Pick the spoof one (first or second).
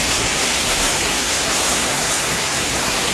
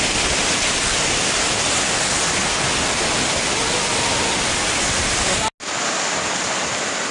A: first